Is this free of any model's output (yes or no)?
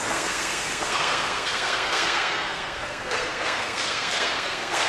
no